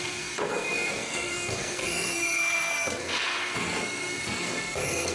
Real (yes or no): no